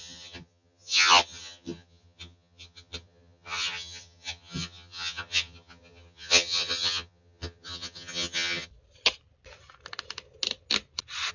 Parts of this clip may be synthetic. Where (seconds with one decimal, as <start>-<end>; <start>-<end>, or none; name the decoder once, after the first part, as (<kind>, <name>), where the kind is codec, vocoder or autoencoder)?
0.0-8.7 (vocoder, HiFi-GAN)